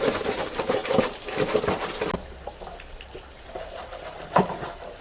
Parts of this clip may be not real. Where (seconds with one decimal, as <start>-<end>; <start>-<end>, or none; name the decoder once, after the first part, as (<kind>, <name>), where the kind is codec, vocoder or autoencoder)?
none

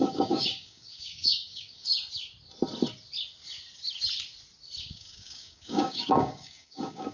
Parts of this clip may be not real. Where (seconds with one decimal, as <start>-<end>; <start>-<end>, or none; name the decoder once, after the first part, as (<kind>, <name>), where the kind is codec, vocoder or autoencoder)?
0.0-1.9 (codec, DAC); 4.8-7.1